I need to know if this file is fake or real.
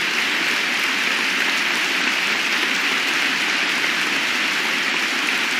real